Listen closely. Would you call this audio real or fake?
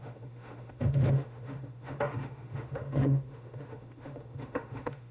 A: fake